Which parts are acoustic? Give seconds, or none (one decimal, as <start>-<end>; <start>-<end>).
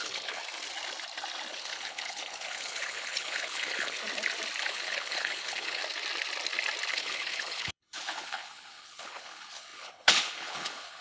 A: 0.4-1.5; 4.0-4.7; 5.8-6.9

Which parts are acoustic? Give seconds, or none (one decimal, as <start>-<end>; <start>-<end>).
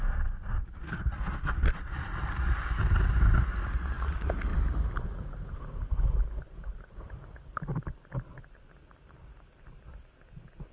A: 0.0-10.7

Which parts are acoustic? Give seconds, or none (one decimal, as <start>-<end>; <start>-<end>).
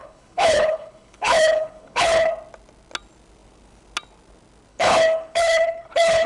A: 2.3-4.7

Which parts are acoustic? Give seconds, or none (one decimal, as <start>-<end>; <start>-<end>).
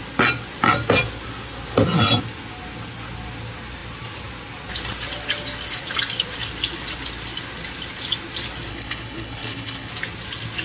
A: 0.0-8.7; 9.9-10.6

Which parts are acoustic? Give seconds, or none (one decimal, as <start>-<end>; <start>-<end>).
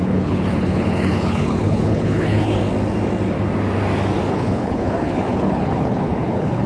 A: 2.6-4.3